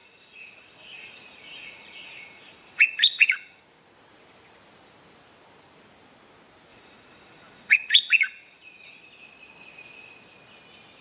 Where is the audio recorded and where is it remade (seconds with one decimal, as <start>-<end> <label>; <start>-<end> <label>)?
0.0-3.6 remade; 3.6-6.7 recorded; 6.7-9.0 remade; 9.0-11.0 recorded